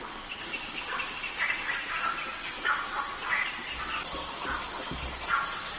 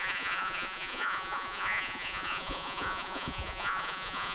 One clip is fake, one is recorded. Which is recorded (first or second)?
first